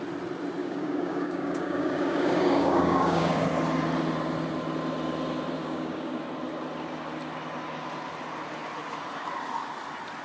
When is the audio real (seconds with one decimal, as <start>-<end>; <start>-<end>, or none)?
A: 0.0-0.6; 3.5-5.6; 6.2-10.2